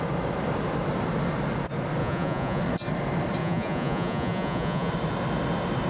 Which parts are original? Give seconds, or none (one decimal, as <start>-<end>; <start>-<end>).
0.0-2.0; 2.6-3.4; 4.9-5.9